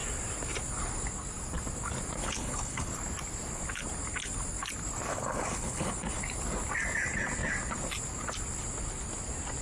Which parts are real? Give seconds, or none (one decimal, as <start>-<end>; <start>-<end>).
0.0-2.2; 2.9-5.1; 5.9-9.6